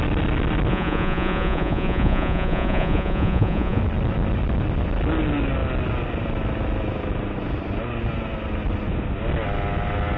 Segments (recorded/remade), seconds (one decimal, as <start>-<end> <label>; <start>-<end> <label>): 0.0-0.7 recorded; 0.7-3.8 remade; 3.8-10.2 recorded